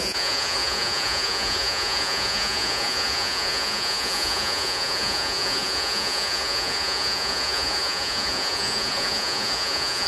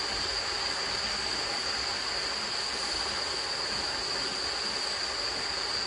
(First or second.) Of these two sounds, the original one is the second